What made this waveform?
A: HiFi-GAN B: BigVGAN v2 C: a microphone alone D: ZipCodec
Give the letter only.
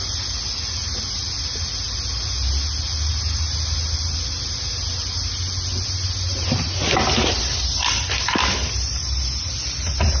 C